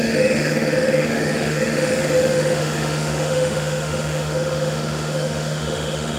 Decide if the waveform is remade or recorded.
remade